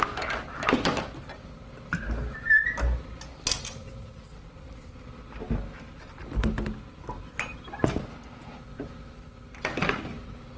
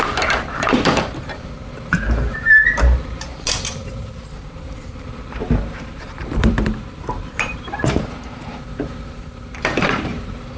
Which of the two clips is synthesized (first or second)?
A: second